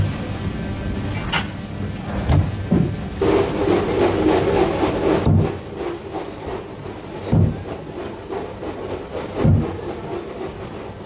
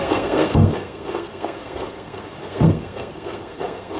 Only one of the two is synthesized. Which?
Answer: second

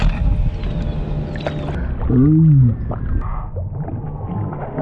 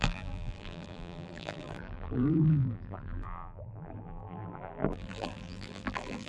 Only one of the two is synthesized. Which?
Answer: second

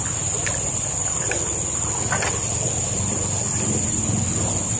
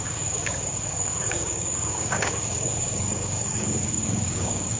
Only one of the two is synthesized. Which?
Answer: second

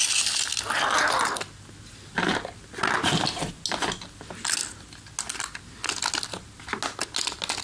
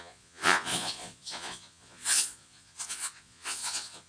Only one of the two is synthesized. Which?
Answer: second